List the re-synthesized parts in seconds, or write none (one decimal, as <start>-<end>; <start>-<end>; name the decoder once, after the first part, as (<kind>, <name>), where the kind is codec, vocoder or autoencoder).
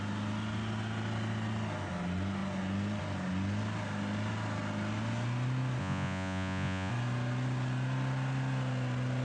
5.8-6.9 (vocoder, Vocos)